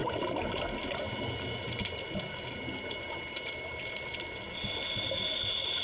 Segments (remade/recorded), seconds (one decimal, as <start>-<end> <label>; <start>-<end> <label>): 0.0-5.8 recorded